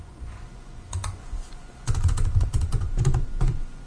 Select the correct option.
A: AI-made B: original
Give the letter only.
A